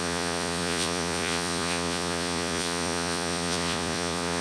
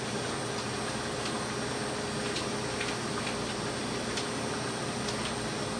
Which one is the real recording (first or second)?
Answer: second